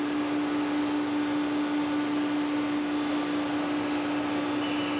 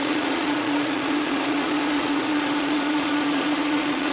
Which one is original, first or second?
first